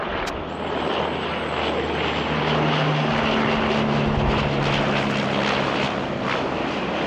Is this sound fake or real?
real